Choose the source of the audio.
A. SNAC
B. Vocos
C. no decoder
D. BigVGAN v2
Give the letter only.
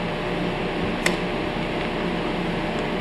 C